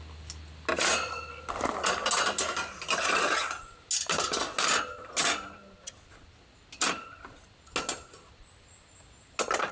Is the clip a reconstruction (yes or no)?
no